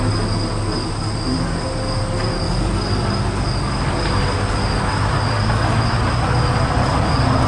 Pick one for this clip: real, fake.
real